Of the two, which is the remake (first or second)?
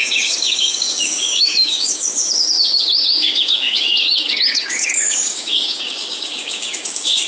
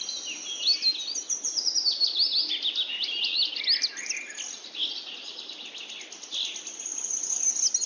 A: first